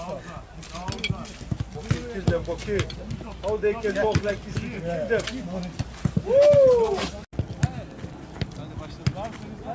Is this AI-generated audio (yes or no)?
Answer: no